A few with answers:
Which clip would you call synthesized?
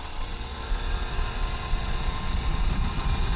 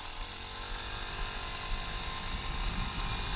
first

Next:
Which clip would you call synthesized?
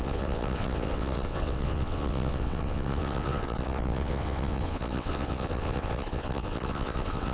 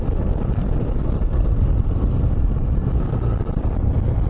first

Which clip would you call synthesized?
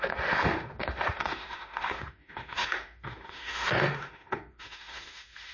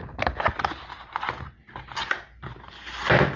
first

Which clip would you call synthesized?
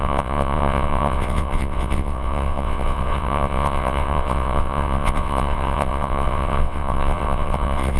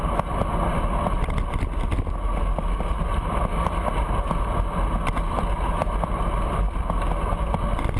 first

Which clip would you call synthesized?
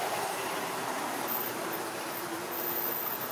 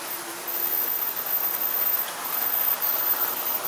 first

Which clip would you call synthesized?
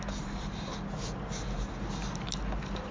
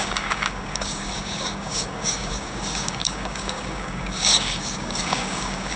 second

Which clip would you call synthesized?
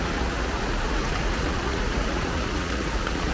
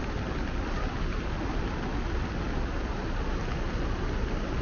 first